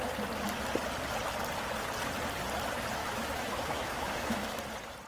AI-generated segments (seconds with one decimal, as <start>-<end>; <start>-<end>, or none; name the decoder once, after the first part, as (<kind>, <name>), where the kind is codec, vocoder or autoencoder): 3.0-4.6 (autoencoder, DAC-VAE)